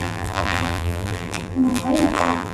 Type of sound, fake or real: fake